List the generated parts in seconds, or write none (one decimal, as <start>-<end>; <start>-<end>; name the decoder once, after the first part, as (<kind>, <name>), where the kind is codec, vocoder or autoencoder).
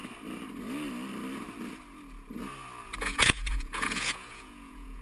3.0-5.0 (vocoder, Vocos)